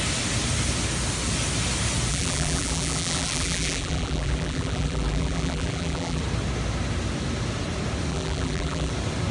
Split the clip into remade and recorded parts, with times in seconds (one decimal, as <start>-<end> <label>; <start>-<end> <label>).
0.0-2.1 recorded; 2.1-6.2 remade; 6.2-8.1 recorded; 8.1-8.9 remade; 8.9-9.3 recorded